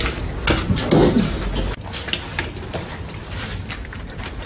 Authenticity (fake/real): real